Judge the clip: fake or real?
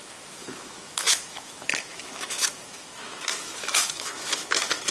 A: fake